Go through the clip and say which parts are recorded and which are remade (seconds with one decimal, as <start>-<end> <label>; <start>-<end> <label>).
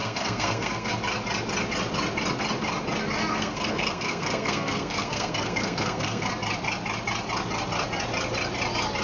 0.0-0.9 remade; 0.9-3.3 recorded; 3.3-6.3 remade; 6.3-9.0 recorded